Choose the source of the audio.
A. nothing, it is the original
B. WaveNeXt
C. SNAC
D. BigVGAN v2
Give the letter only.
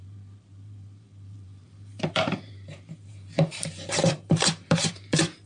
D